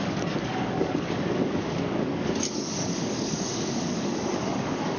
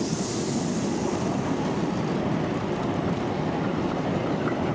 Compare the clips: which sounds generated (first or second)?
first